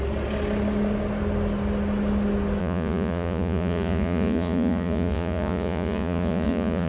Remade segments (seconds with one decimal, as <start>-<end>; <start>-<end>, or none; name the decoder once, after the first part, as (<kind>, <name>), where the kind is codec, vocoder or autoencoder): 2.6-6.9 (vocoder, Vocos)

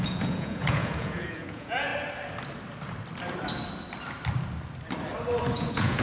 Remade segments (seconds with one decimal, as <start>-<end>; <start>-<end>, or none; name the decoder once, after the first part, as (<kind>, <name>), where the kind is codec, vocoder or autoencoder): 0.0-1.9 (vocoder, Vocos); 5.5-6.0

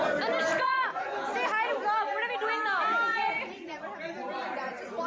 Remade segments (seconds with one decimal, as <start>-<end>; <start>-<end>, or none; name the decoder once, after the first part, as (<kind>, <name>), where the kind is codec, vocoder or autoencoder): 0.5-1.1 (vocoder, Vocos); 3.1-3.8

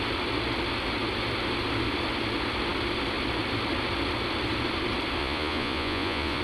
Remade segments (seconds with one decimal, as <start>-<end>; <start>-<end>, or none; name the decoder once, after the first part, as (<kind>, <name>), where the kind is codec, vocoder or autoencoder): 5.2-6.4 (vocoder, Vocos)

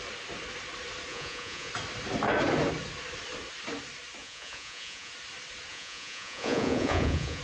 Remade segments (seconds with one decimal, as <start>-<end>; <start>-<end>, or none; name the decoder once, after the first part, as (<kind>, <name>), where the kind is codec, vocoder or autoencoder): 1.1-1.7 (vocoder, Vocos); 4.2-5.1; 5.7-7.4

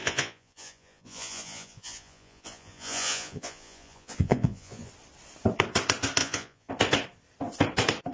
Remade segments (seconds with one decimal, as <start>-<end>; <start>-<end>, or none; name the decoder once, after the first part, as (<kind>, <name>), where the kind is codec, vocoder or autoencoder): 0.0-4.9 (vocoder, Vocos); 6.2-6.7

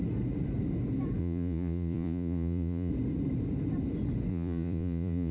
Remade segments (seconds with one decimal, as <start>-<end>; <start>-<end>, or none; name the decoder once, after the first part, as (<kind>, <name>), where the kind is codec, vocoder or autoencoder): 1.2-2.9 (vocoder, Vocos); 4.3-5.3

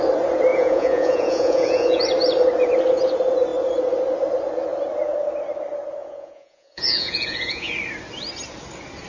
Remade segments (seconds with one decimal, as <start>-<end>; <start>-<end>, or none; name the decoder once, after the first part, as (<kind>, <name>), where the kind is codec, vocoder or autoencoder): 0.5-2.0 (vocoder, Vocos); 6.0-7.7